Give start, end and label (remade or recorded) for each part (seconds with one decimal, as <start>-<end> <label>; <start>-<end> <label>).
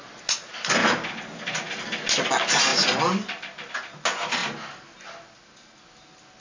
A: 0.0-6.4 recorded